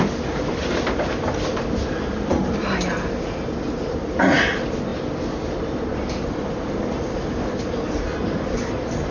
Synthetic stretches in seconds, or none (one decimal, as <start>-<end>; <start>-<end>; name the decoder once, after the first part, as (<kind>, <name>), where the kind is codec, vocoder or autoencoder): none